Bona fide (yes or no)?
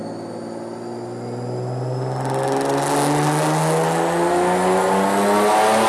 yes